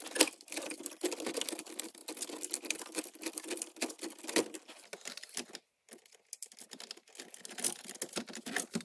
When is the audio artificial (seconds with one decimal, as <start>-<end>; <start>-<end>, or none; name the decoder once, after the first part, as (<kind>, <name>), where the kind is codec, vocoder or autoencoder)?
none